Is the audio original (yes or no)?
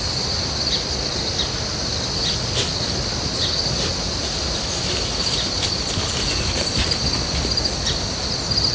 yes